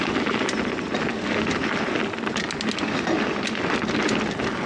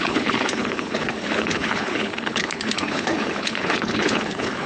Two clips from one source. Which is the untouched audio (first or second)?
first